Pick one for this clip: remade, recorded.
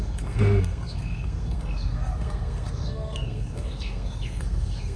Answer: remade